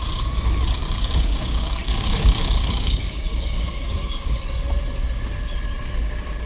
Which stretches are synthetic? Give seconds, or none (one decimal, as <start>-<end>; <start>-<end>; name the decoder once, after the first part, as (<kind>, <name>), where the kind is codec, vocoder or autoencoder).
0.8-4.4 (codec, DAC); 6.0-6.5